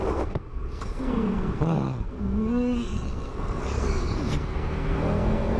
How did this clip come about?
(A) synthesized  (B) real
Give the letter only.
A